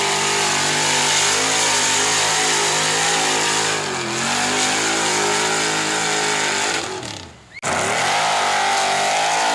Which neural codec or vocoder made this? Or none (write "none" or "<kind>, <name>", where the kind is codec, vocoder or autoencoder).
none